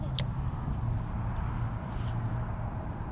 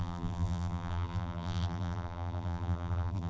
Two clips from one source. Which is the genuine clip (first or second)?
first